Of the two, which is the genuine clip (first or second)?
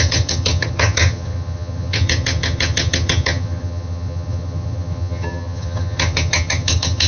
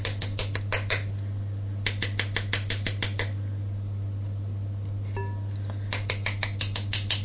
second